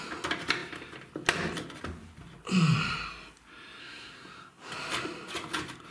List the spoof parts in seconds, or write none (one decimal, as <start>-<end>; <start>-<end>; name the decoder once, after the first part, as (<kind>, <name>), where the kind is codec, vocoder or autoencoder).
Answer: 3.8-4.7 (codec, SNAC)